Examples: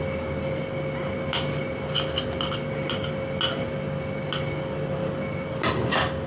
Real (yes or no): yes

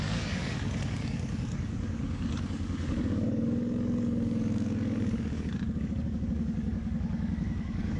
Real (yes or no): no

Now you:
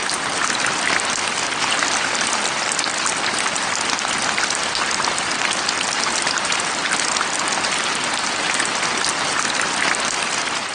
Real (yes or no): yes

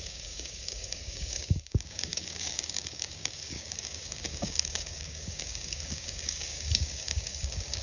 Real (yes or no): no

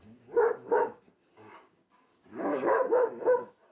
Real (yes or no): no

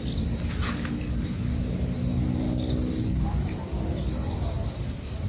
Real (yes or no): yes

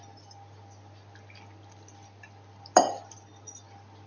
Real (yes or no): yes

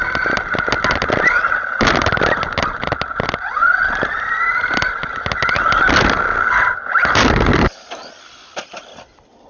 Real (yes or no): yes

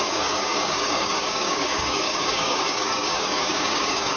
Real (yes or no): no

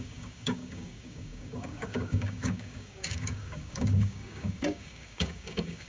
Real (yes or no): no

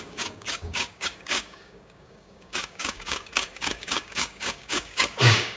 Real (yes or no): no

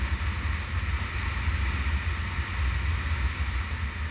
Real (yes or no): yes